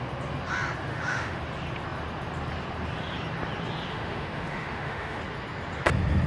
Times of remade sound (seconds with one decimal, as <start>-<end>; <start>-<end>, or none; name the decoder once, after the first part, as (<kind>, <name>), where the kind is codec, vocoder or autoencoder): 0.9-1.4 (autoencoder, DAC-VAE); 3.9-5.2

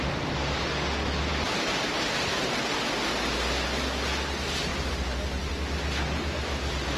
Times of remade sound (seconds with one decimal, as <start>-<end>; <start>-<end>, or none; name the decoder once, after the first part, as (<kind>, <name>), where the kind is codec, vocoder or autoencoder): none

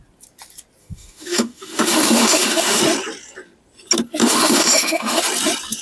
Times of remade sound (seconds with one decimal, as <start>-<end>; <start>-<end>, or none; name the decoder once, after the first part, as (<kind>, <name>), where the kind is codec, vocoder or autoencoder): 0.8-2.8 (autoencoder, DAC-VAE); 4.2-5.2

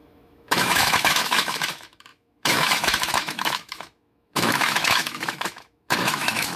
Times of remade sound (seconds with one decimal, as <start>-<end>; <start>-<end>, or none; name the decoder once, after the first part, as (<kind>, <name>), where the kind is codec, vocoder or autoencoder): 0.0-6.6 (autoencoder, DAC-VAE)